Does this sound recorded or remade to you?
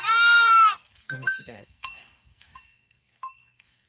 remade